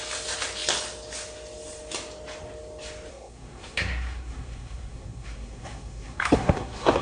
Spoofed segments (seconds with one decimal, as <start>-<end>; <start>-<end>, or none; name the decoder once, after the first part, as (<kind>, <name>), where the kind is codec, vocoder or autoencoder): 3.1-7.0 (codec, SNAC)